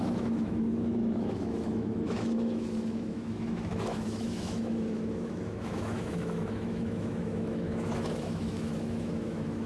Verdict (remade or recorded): remade